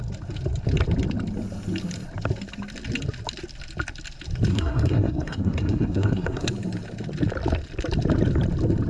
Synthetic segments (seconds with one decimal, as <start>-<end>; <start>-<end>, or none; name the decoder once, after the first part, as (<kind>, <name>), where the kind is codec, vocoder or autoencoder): 4.5-6.5 (codec, SNAC)